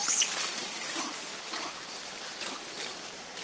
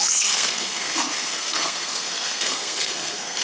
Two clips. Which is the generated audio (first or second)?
second